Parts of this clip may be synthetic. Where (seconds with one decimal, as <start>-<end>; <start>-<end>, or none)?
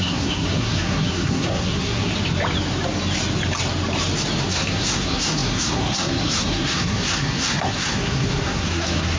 0.0-2.1; 4.4-9.2